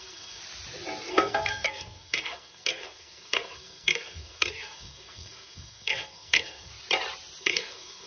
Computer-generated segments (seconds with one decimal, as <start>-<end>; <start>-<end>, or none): 0.0-0.4; 1.1-6.7; 7.4-8.1